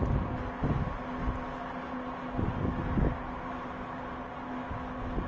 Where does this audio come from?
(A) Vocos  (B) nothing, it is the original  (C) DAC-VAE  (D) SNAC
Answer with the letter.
B